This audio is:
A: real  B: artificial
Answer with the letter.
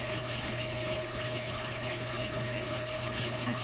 B